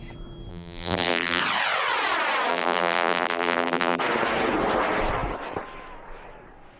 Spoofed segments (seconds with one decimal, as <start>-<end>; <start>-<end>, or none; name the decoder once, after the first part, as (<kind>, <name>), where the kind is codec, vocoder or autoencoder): 0.5-1.4 (vocoder, BigVGAN v2); 2.5-4.0